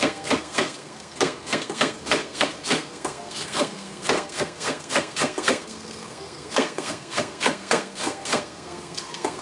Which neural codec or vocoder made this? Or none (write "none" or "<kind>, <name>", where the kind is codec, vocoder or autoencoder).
codec, SNAC